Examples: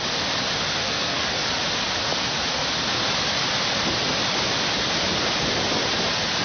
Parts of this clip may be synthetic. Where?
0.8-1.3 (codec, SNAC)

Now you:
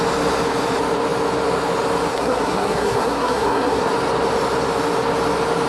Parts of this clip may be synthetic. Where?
2.1-3.9 (codec, SNAC)

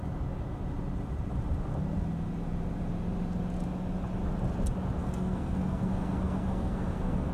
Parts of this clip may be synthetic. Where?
5.0-7.3 (codec, SNAC)

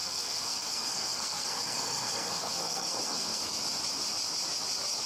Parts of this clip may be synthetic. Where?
0.0-3.6 (codec, SNAC)

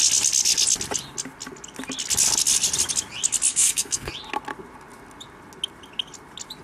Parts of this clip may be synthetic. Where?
3.5-4.1 (codec, SNAC)

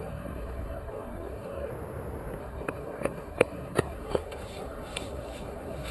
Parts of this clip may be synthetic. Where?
0.0-1.7 (codec, SNAC); 2.4-5.9